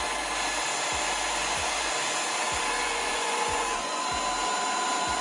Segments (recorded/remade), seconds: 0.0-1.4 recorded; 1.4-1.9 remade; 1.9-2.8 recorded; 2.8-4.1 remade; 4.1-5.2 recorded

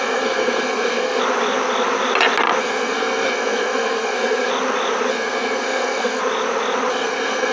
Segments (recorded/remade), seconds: 0.0-1.2 remade; 1.2-2.6 recorded; 2.6-4.5 remade; 4.5-5.1 recorded; 5.1-6.2 remade; 6.2-6.9 recorded; 6.9-7.5 remade

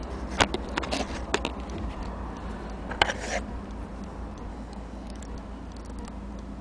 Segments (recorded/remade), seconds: 0.0-4.5 recorded; 4.5-5.2 remade; 5.2-6.6 recorded

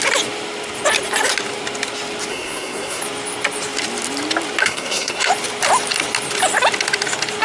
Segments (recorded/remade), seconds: 0.0-2.3 recorded; 2.3-3.0 remade; 3.0-4.6 recorded; 4.6-5.3 remade; 5.3-7.4 recorded

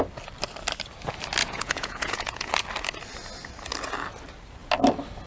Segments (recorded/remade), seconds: 0.0-1.4 recorded; 1.4-2.5 remade; 2.5-5.3 recorded